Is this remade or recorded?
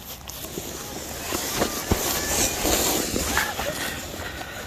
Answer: recorded